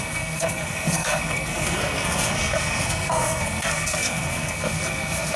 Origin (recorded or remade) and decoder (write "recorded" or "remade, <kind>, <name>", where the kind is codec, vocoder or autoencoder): remade, codec, SNAC